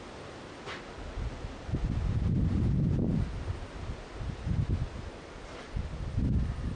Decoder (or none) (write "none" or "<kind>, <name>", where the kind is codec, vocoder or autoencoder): none